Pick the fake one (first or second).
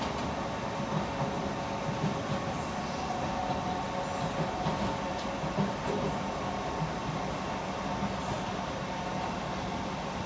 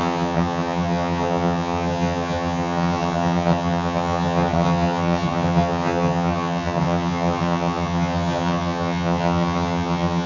second